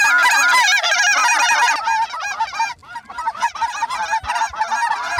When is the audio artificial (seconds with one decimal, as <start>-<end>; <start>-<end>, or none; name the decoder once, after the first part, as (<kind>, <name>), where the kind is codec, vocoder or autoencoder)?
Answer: 2.8-4.3 (vocoder, BigVGAN v2)